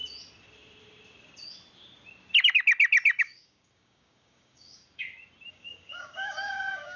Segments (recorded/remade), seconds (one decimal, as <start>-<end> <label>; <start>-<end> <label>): 0.0-3.2 recorded; 3.2-4.8 remade; 4.8-5.5 recorded; 5.5-7.0 remade